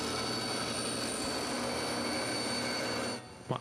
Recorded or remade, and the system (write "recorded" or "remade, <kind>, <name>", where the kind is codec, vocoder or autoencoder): recorded